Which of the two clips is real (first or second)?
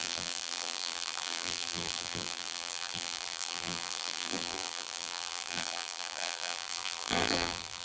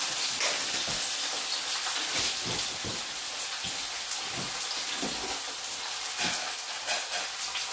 second